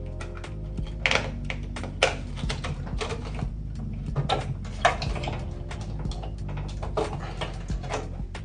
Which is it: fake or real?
real